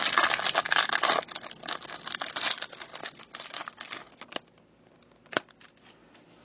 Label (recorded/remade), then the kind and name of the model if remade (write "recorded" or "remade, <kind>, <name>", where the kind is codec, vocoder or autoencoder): recorded